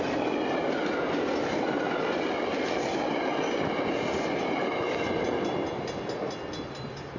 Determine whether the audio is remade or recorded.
recorded